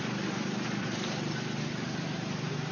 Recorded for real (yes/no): yes